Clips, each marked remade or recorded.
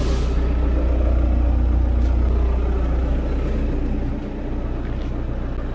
recorded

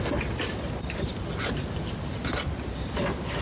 recorded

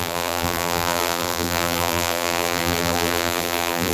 remade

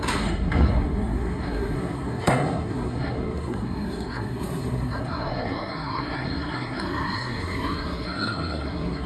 remade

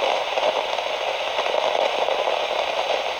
recorded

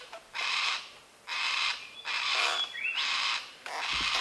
recorded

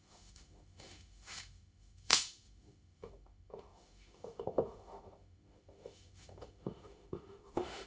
remade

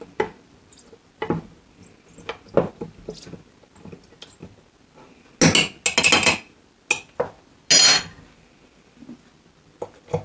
recorded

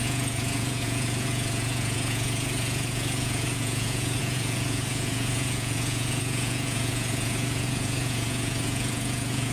remade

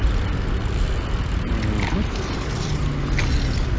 recorded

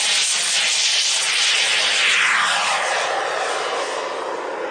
recorded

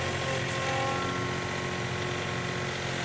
recorded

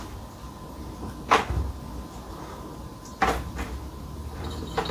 recorded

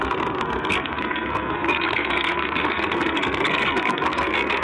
remade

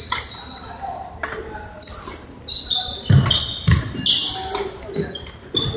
recorded